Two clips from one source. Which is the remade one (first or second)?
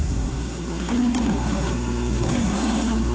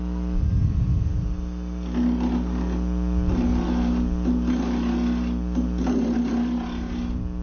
first